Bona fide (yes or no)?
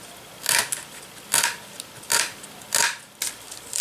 yes